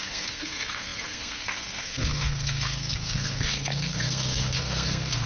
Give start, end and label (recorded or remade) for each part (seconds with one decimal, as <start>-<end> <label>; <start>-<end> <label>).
0.0-5.3 remade